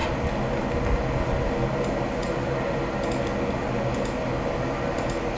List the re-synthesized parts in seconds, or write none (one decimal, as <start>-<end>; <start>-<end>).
none